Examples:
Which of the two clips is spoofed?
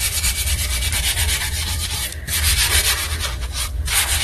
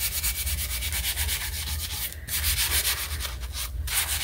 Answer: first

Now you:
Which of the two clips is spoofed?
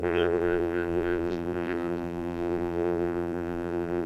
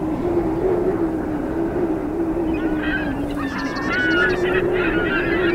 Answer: first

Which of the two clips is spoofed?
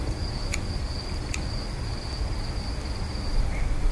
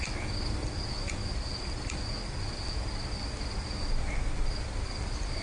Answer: first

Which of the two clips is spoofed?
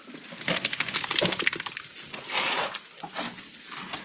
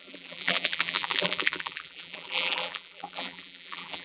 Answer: second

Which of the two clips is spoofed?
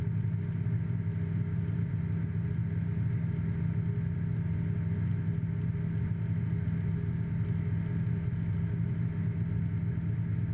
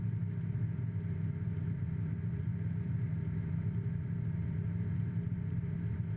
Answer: second